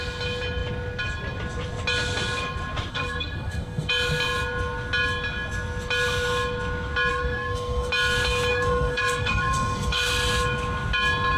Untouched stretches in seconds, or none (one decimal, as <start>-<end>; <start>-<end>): 0.0-2.9; 3.9-7.1; 7.9-8.5; 10.1-11.4